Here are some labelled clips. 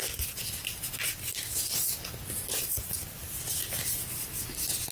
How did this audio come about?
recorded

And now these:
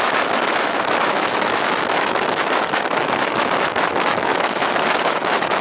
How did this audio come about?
remade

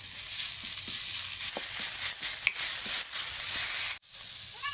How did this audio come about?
recorded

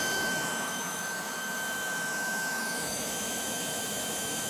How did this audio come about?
remade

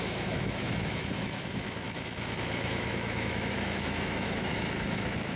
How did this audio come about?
remade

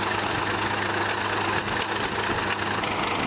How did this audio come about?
recorded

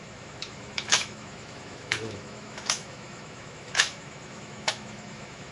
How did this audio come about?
remade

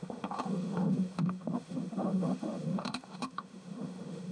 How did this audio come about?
remade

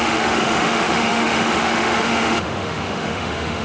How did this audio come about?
remade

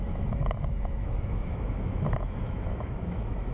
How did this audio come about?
remade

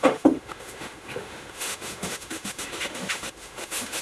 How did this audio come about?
remade